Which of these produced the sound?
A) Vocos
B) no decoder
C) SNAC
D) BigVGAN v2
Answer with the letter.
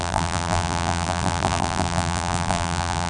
D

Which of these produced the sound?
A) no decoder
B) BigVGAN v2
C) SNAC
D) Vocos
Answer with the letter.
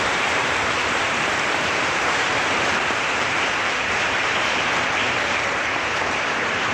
B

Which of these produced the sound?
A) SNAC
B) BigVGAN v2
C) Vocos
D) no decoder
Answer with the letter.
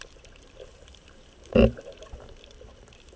B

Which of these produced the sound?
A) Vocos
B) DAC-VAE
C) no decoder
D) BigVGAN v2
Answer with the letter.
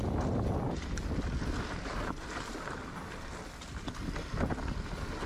C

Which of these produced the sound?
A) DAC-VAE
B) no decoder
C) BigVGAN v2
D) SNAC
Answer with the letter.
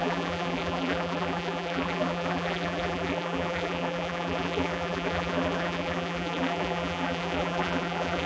C